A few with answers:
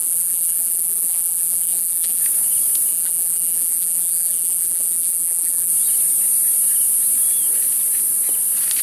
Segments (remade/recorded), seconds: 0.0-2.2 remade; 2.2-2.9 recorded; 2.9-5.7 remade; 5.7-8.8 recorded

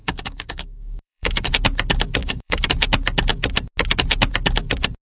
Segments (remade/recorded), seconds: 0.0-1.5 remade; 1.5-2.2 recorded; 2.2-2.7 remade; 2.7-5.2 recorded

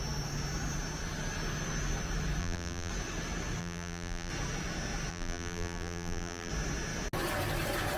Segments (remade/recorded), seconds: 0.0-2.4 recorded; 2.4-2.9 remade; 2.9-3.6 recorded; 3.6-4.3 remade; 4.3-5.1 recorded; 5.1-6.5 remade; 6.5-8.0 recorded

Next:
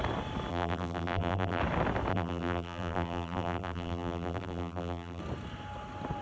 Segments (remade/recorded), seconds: 0.0-0.5 recorded; 0.5-1.6 remade; 1.6-2.1 recorded; 2.1-5.2 remade; 5.2-6.2 recorded

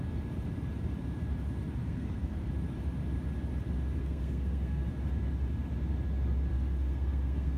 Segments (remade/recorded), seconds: 0.0-1.8 recorded; 1.8-2.5 remade; 2.5-4.0 recorded; 4.0-4.9 remade; 4.9-6.5 recorded; 6.5-7.6 remade